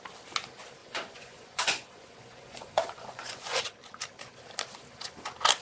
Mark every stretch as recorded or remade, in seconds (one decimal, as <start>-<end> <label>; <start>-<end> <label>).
0.0-0.8 recorded; 0.8-3.6 remade; 3.6-5.6 recorded